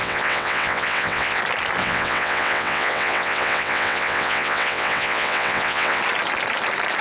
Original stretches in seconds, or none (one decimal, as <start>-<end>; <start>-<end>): 1.4-1.8; 6.0-7.0